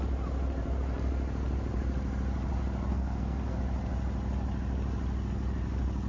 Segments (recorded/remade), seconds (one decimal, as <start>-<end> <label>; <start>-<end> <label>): 0.0-2.9 recorded; 2.9-3.6 remade; 3.6-6.1 recorded

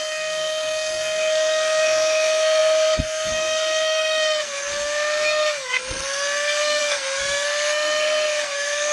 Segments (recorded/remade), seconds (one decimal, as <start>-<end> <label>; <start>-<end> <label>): 0.0-8.9 remade

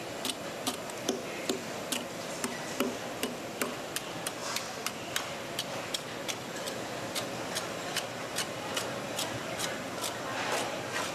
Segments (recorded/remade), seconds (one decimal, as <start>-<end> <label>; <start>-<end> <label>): 0.0-11.1 recorded

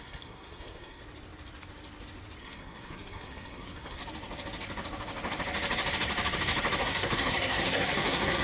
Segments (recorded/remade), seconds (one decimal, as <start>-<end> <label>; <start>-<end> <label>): 0.0-1.0 remade; 1.0-2.4 recorded; 2.4-4.0 remade; 4.0-6.8 recorded; 6.8-8.4 remade

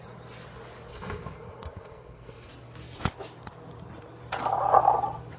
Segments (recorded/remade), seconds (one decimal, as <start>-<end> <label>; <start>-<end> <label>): 0.0-0.9 recorded; 0.9-2.5 remade; 2.5-5.4 recorded

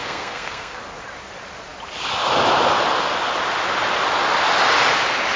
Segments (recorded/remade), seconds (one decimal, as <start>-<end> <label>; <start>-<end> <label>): 0.0-0.8 remade; 0.8-5.4 recorded

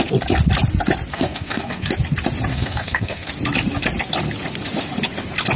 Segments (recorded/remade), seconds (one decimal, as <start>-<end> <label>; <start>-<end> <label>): 0.0-1.1 recorded; 1.1-1.9 remade; 1.9-2.5 recorded; 2.5-3.3 remade; 3.3-5.6 recorded

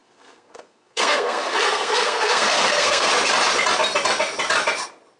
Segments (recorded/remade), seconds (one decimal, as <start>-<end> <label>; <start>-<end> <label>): 0.0-3.1 remade; 3.1-5.2 recorded